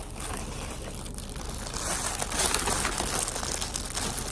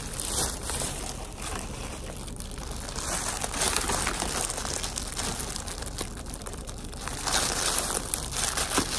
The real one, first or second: first